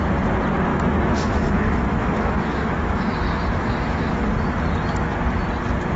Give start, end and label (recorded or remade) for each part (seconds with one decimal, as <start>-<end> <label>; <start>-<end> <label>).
0.0-0.7 recorded; 0.7-4.3 remade; 4.3-6.0 recorded